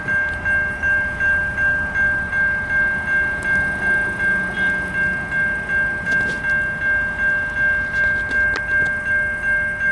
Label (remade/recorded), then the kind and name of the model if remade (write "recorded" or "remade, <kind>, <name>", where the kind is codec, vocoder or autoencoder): recorded